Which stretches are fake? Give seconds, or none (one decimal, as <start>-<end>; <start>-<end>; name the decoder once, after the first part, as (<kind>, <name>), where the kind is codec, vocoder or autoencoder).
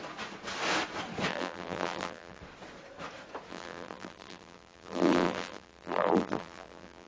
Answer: 1.3-2.4 (vocoder, BigVGAN v2); 3.5-7.1